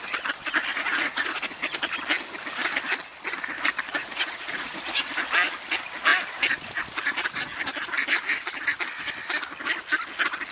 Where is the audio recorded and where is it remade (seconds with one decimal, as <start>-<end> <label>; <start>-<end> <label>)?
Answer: 0.0-0.7 recorded; 0.7-1.8 remade; 1.8-3.9 recorded; 3.9-5.1 remade; 5.1-10.5 recorded